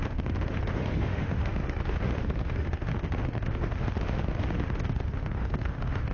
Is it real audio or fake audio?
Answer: fake